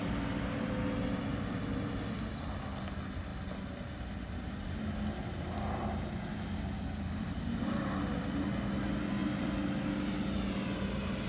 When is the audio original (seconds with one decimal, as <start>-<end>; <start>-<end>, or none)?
0.0-11.3